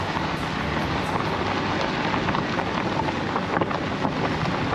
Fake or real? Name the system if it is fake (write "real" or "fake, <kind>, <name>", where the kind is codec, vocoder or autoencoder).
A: real